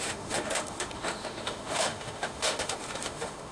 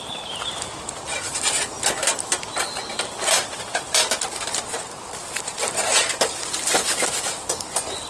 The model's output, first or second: first